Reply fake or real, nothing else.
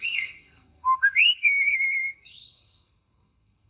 fake